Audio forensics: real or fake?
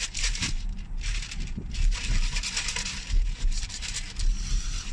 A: fake